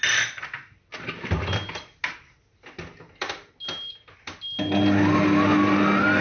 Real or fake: real